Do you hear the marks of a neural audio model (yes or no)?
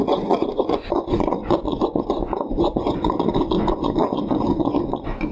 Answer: yes